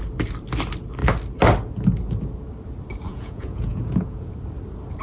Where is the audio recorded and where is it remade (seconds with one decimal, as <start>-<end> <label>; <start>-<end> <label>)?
0.0-3.1 recorded; 3.1-4.3 remade; 4.3-5.0 recorded

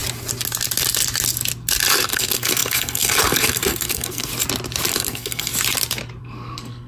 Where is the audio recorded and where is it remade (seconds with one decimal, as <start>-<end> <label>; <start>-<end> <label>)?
0.0-1.9 recorded; 1.9-4.3 remade; 4.3-4.9 recorded; 4.9-5.5 remade; 5.5-6.2 recorded; 6.2-6.9 remade

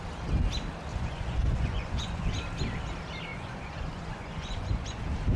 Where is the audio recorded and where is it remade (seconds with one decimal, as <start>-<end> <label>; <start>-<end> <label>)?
0.0-0.9 recorded; 0.9-2.3 remade; 2.3-3.3 recorded; 3.3-5.0 remade; 5.0-5.4 recorded

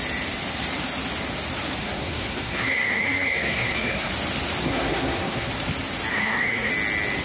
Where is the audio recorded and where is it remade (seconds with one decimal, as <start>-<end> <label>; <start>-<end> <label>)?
0.0-1.8 recorded; 1.8-4.1 remade; 4.1-4.6 recorded; 4.6-5.5 remade; 5.5-6.1 recorded; 6.1-6.7 remade; 6.7-7.2 recorded

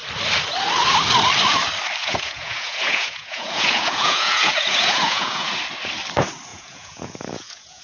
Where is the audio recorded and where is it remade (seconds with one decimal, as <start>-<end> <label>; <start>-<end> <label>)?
0.0-2.0 recorded; 2.0-5.5 remade; 5.5-6.5 recorded; 6.5-7.8 remade

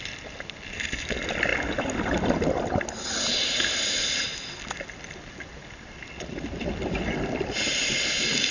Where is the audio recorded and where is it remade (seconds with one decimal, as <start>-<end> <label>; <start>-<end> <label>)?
0.0-8.5 recorded

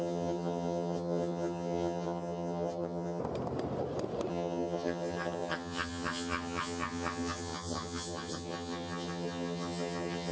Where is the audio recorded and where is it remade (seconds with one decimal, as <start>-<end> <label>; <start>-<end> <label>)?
0.0-3.2 remade; 3.2-4.3 recorded; 4.3-10.3 remade